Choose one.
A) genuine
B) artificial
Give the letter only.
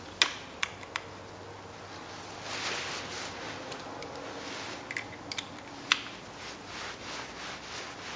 A